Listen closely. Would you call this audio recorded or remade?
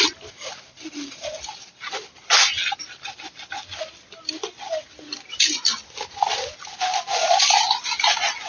recorded